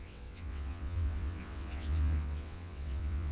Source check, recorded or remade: remade